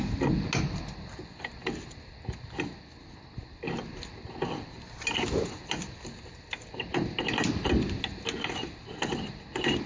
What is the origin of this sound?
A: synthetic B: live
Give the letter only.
B